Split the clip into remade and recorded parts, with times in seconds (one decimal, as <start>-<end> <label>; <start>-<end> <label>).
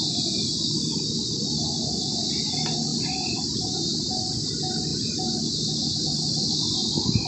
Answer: 0.0-2.9 recorded; 2.9-4.1 remade; 4.1-7.3 recorded